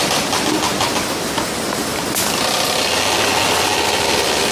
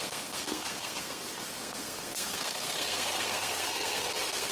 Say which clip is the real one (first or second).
first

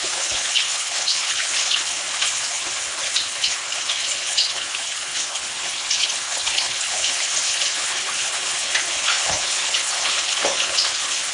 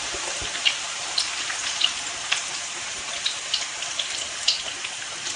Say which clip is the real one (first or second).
second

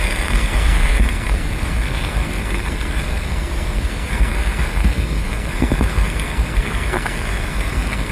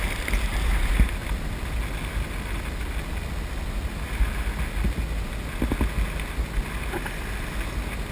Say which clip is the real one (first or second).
second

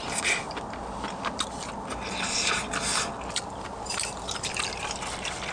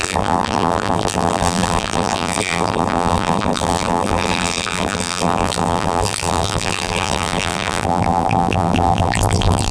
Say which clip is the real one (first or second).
first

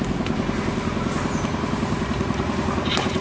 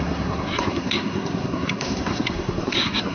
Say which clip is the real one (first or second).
first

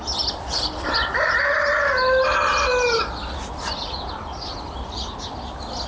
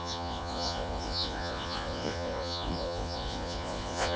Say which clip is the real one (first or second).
first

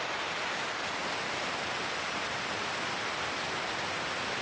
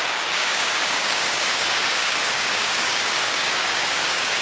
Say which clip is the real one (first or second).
first